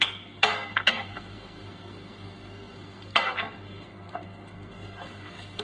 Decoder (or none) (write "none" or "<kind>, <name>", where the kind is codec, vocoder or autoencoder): codec, SNAC